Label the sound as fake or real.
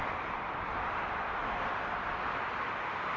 real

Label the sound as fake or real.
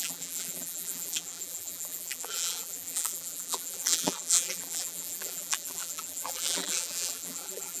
fake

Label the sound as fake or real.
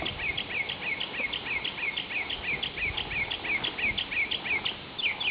real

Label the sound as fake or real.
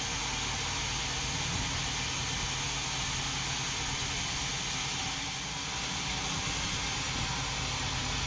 real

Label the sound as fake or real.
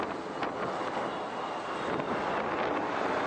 real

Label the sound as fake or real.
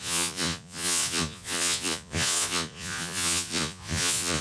fake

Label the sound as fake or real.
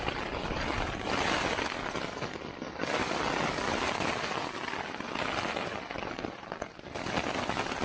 real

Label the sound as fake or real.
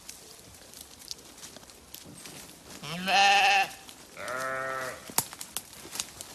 real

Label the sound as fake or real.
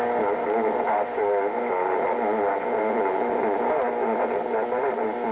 real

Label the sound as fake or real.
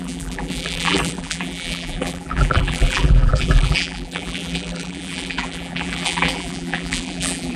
fake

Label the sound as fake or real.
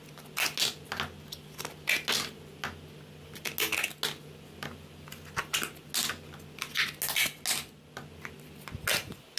real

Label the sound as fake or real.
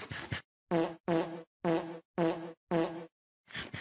real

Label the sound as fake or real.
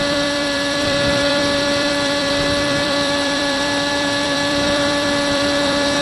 fake